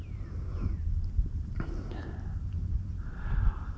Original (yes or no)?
yes